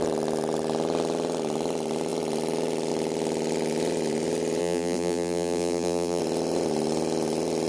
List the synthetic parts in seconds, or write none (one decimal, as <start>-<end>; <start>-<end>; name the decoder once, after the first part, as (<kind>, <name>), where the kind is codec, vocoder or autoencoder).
4.6-6.2 (vocoder, BigVGAN v2)